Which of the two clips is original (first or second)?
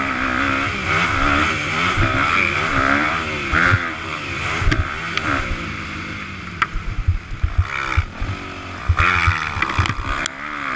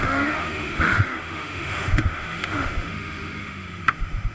first